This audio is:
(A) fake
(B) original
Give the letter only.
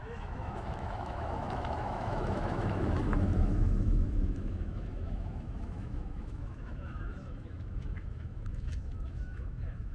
A